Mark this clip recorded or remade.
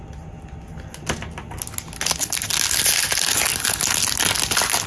recorded